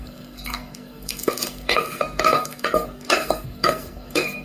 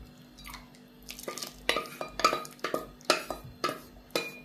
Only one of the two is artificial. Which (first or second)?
first